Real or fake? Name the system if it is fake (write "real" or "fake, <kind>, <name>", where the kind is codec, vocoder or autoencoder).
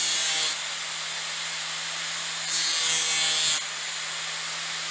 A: real